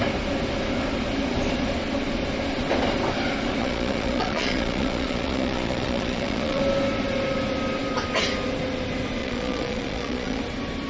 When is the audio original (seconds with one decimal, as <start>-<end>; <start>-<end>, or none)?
0.0-3.6; 6.6-9.2; 10.4-10.9